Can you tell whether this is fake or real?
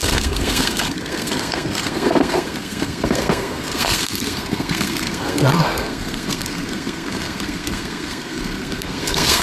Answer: fake